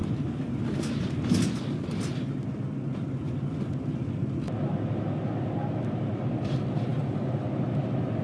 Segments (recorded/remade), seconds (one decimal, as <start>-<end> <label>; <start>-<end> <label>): 0.0-8.2 recorded